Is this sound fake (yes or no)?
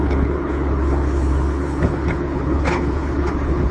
yes